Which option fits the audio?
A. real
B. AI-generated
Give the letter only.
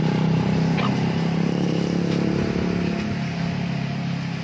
A